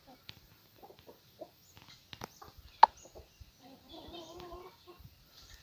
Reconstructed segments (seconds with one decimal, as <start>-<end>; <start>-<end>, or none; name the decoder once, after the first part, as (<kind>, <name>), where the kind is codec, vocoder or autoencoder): 0.0-1.6 (vocoder, BigVGAN v2); 2.4-2.8; 3.6-5.6